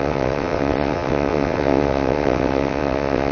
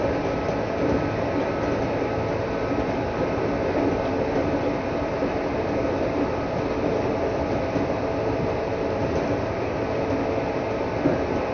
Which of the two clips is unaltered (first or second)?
second